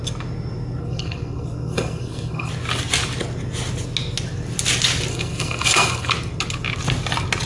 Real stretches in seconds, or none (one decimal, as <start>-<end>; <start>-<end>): 0.0-0.8; 2.5-5.1; 6.1-7.5